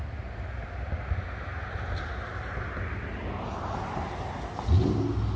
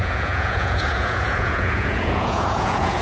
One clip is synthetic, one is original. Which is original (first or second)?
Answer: first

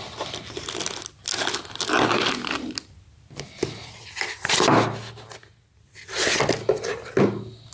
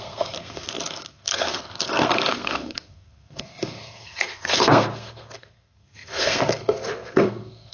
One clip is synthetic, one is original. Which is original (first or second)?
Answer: first